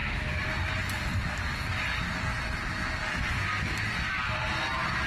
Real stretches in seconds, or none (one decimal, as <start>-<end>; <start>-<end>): 0.5-1.1; 2.0-5.1